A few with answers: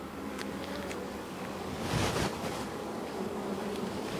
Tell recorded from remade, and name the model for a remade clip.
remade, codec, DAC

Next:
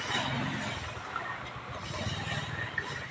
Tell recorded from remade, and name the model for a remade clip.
recorded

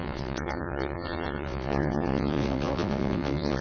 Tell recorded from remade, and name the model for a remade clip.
remade, vocoder, WaveNeXt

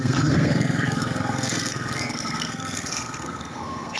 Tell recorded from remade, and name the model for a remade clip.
remade, codec, SNAC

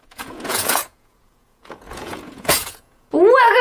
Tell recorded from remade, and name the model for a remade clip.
remade, vocoder, Vocos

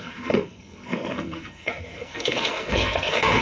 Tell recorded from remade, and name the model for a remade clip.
remade, codec, SNAC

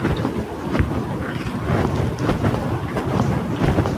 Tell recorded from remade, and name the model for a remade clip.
recorded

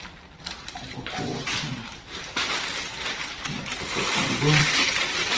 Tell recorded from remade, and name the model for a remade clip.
remade, vocoder, BigVGAN v2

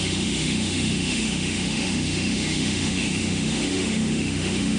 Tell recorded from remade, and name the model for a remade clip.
remade, autoencoder, DAC-VAE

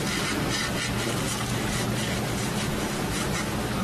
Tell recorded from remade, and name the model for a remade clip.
recorded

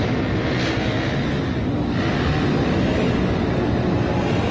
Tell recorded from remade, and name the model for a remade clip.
recorded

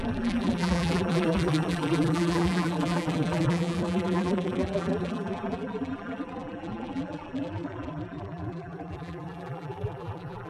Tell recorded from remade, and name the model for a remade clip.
remade, vocoder, BigVGAN v2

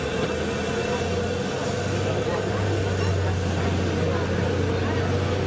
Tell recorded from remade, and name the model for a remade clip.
recorded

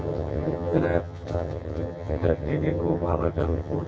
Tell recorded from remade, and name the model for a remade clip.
remade, vocoder, HiFi-GAN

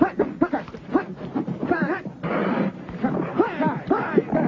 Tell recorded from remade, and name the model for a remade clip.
remade, vocoder, BigVGAN v2